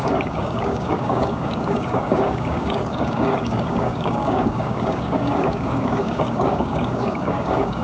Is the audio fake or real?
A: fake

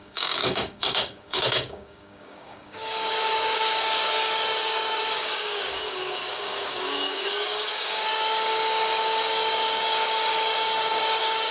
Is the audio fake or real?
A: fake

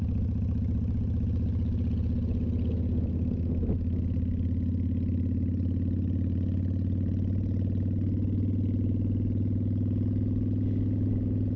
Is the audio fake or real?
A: real